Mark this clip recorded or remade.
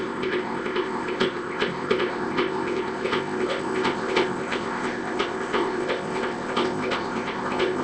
remade